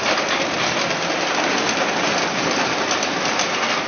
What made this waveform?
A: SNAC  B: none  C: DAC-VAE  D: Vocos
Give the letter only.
B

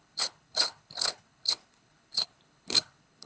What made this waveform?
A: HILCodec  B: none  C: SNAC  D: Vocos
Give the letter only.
A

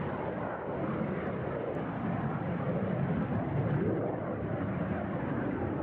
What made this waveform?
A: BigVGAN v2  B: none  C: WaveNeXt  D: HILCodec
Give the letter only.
A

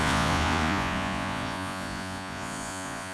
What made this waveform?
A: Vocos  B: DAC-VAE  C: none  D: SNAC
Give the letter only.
A